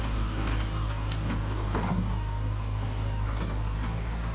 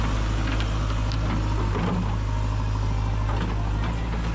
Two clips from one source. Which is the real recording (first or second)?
second